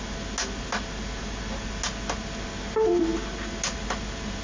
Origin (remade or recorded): recorded